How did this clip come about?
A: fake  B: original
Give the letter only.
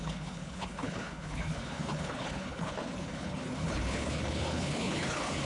A